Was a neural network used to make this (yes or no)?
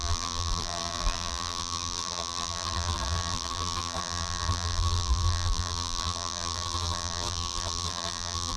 yes